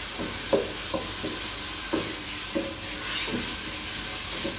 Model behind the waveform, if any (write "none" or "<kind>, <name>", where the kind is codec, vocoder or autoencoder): none